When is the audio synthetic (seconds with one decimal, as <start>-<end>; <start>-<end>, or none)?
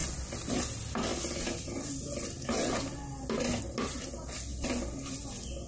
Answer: none